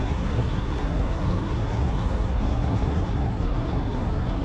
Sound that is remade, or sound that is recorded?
remade